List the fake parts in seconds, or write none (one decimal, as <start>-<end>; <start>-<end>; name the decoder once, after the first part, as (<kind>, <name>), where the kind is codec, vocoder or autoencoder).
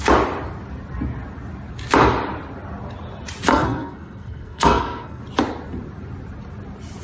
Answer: 3.5-5.2 (codec, SNAC)